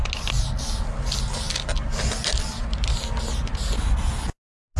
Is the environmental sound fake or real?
real